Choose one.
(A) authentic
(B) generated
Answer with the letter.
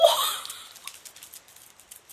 A